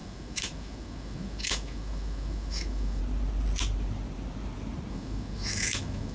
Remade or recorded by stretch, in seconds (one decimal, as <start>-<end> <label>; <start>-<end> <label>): 0.0-3.0 remade; 3.0-4.9 recorded; 4.9-6.1 remade